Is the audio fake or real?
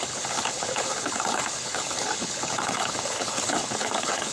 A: fake